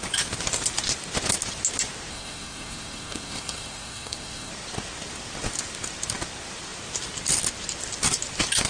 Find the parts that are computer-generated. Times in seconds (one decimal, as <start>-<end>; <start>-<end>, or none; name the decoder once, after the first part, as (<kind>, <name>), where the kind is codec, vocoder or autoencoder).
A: 2.1-4.5 (codec, SNAC)